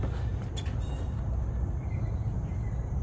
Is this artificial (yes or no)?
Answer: no